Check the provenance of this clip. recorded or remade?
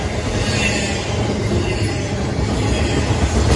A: recorded